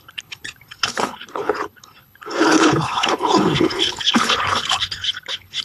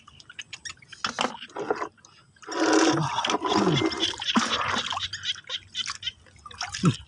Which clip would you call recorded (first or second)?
second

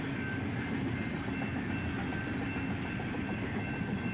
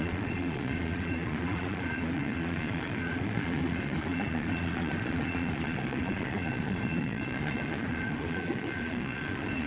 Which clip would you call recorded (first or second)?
first